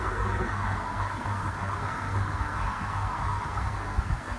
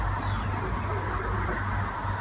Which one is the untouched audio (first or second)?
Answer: second